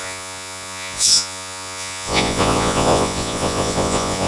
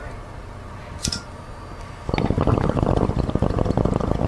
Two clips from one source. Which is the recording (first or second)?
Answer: second